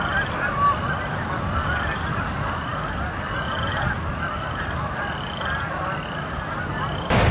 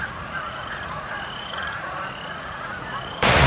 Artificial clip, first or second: second